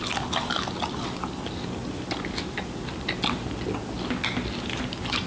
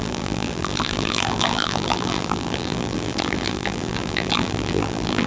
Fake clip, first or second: second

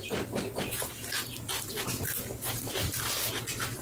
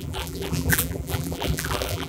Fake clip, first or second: second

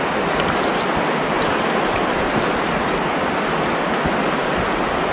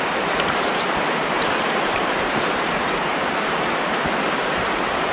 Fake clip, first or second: second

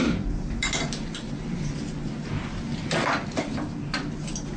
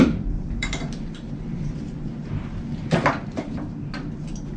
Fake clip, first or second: second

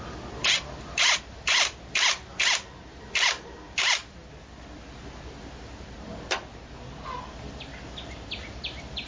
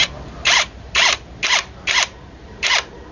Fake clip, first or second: second